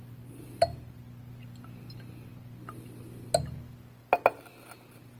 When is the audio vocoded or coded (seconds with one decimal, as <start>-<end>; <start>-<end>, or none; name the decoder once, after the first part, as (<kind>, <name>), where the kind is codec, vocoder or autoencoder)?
none